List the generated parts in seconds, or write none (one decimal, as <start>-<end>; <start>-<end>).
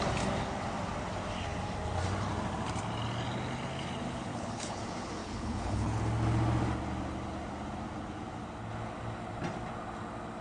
4.3-4.8; 5.2-6.0